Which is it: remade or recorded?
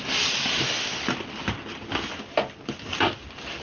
recorded